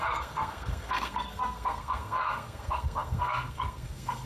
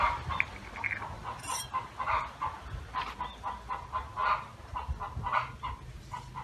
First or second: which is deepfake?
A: first